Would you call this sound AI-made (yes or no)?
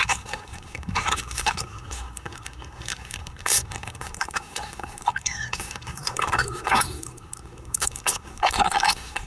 yes